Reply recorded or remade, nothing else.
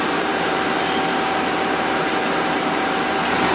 remade